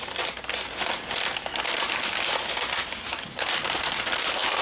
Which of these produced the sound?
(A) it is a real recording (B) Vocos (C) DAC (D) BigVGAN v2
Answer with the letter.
A